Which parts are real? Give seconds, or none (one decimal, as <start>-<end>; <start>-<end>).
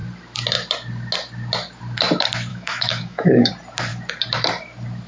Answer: 0.0-2.5; 3.5-5.1